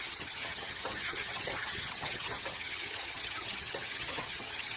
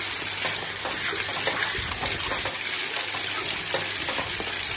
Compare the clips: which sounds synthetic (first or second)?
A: first